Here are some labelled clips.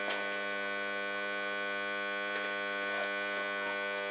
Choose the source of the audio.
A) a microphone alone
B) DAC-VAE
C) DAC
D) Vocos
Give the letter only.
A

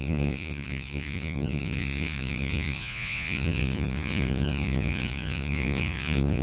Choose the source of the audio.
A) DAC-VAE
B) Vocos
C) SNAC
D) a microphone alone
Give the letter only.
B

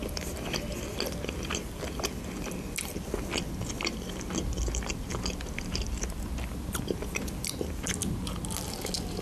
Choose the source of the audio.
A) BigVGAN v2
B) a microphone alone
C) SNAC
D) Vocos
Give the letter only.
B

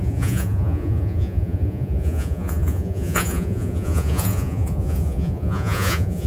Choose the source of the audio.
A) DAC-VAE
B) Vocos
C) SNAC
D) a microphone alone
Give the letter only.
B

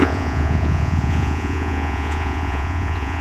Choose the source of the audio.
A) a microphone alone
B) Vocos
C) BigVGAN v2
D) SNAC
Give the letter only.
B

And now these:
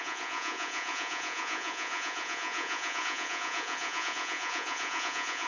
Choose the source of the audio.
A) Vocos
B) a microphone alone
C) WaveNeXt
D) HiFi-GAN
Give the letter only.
A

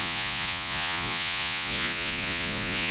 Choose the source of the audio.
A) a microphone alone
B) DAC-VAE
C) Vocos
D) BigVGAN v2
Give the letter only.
C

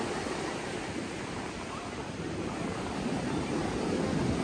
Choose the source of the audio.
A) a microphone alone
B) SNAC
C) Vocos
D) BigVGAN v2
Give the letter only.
A